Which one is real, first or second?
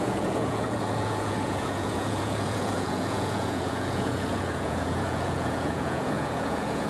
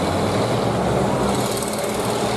second